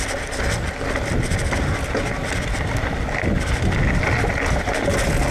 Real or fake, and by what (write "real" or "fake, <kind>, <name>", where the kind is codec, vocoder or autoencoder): real